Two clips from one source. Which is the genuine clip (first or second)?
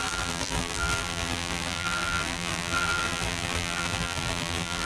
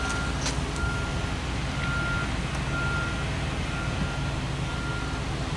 second